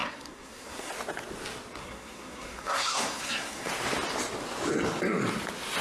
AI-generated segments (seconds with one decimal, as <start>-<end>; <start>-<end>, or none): 0.0-0.9; 1.8-3.7